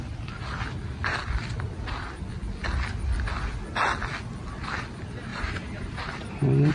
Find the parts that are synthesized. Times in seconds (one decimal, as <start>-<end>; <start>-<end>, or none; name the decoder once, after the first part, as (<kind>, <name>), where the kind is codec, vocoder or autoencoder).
5.3-6.7 (vocoder, BigVGAN v2)